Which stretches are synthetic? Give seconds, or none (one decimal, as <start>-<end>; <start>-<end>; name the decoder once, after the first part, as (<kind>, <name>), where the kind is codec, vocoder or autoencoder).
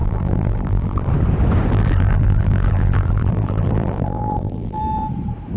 0.0-1.1 (vocoder, BigVGAN v2); 1.7-4.8